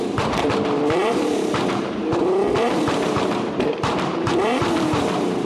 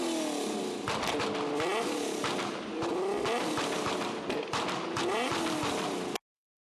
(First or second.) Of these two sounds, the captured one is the second